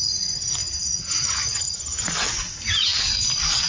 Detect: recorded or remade recorded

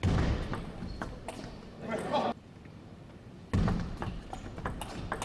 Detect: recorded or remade recorded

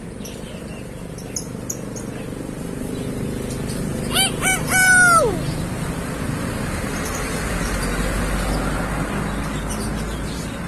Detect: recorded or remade recorded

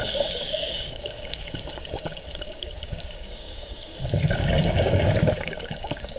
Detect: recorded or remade remade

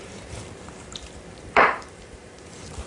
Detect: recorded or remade remade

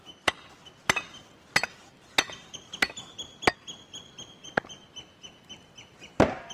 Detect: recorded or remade recorded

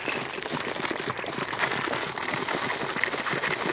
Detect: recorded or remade recorded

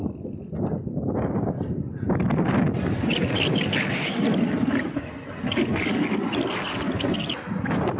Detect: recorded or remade recorded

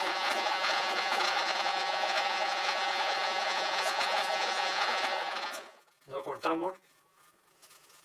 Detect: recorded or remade remade